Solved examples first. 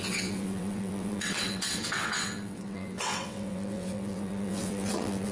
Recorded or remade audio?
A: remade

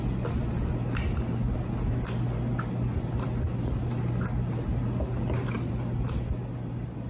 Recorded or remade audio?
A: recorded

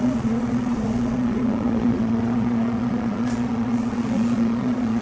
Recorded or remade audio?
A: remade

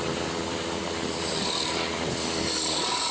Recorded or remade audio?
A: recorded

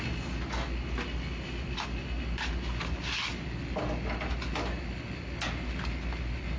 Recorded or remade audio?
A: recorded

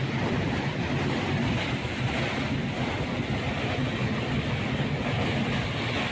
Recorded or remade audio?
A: recorded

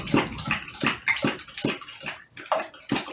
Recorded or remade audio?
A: recorded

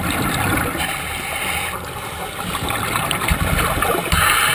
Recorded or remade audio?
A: recorded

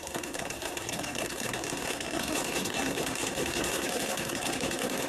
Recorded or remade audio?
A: remade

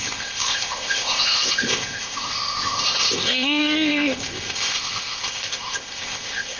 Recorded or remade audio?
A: remade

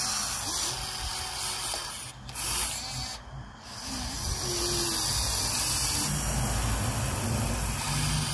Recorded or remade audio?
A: recorded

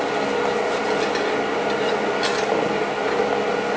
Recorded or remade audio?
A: recorded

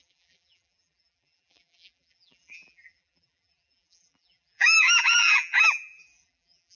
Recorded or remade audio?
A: remade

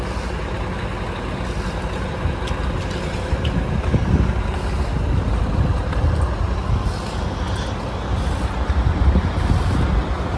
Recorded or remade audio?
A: recorded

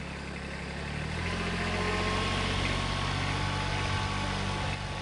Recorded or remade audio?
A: recorded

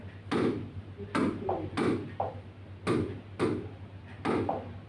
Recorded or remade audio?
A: recorded